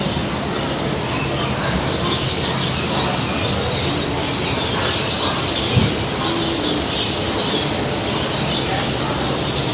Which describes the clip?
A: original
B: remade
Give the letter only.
A